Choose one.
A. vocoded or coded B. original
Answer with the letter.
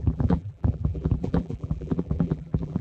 A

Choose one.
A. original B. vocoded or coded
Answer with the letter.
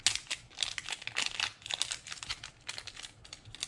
A